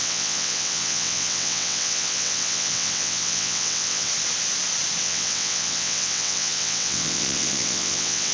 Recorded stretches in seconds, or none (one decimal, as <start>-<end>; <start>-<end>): 4.1-5.0